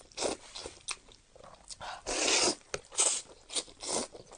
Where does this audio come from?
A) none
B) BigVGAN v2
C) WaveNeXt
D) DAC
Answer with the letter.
A